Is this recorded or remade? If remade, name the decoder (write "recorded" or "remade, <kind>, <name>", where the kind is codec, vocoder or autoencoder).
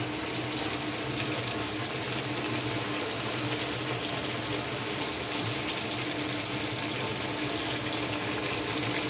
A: recorded